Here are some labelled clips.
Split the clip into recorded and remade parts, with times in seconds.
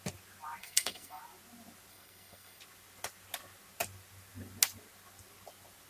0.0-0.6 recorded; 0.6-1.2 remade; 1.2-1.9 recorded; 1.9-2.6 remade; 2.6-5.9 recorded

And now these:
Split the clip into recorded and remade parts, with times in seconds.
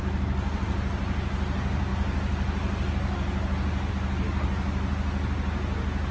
0.0-6.1 recorded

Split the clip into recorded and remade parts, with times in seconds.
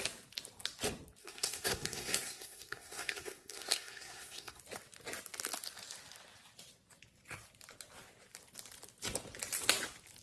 0.0-1.2 recorded; 1.2-4.6 remade; 4.6-10.2 recorded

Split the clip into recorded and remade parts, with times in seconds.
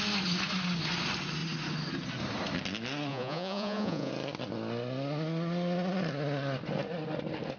0.0-3.1 recorded; 3.1-4.1 remade; 4.1-7.6 recorded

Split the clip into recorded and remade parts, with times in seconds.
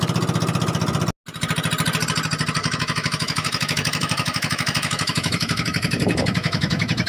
0.0-2.6 recorded; 2.6-7.1 remade